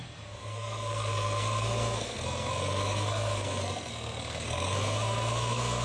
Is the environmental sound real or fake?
fake